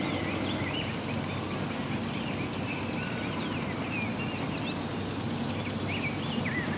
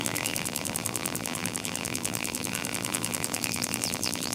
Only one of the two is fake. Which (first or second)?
second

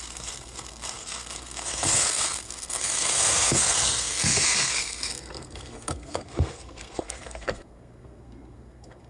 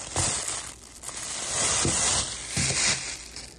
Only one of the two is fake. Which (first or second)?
first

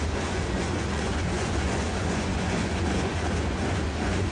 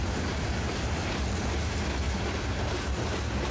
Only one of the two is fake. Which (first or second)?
first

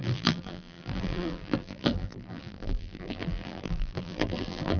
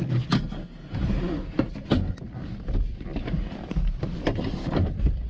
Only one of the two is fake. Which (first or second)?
first